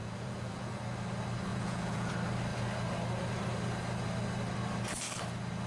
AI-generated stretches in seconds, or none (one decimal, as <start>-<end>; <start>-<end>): 0.0-0.8; 1.5-2.1